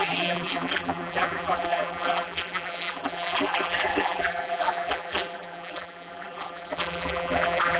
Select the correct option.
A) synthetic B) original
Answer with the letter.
A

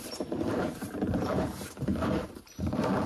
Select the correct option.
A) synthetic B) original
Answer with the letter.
A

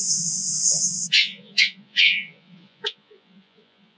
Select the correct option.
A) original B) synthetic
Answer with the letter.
B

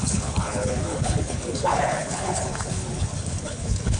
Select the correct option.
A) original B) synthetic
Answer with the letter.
B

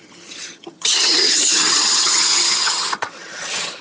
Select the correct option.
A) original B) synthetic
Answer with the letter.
B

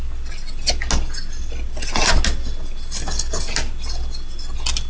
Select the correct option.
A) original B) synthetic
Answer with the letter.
A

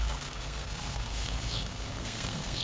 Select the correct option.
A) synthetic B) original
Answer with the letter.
A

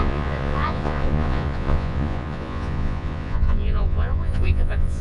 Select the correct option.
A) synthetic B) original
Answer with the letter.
A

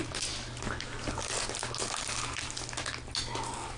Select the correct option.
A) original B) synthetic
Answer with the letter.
A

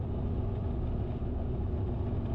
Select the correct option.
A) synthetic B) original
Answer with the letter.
A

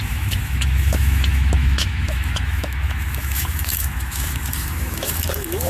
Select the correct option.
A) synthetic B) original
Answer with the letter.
A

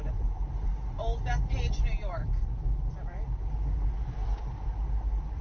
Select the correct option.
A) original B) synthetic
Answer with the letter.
A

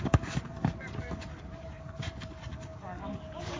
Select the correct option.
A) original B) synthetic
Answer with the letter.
B